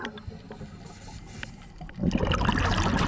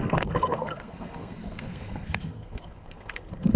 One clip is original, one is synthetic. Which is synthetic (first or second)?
second